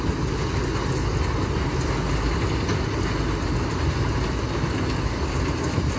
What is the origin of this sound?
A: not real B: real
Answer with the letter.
B